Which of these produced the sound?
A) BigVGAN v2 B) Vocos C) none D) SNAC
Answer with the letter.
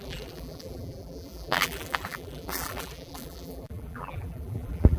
A